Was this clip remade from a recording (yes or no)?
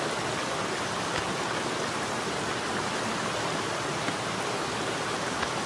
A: no